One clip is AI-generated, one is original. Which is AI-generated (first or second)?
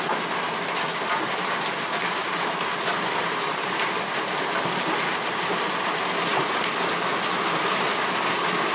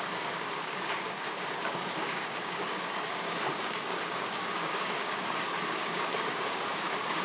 second